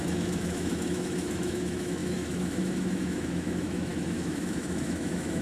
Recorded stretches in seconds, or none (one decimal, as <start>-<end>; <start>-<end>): none